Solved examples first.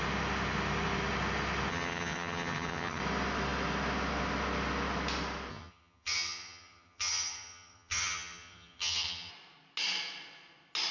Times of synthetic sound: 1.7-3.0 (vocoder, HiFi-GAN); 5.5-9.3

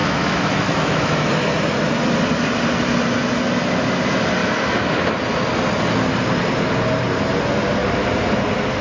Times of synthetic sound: 0.0-1.3 (autoencoder, DAC-VAE)

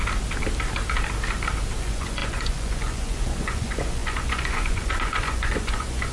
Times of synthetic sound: 1.8-6.1 (vocoder, Vocos)

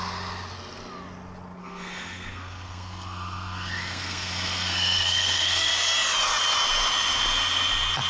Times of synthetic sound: 1.6-5.7 (codec, SNAC)

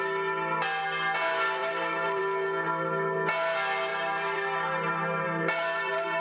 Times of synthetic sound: 1.6-2.2 (vocoder, BigVGAN v2); 3.9-6.2

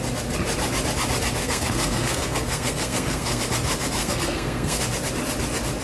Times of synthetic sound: 1.4-3.4 (codec, SNAC); 4.0-4.8

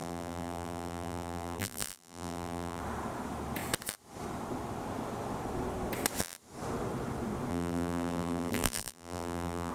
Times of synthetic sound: 0.0-2.8 (vocoder, BigVGAN v2); 7.5-9.7

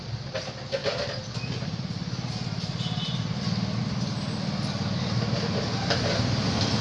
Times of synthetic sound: none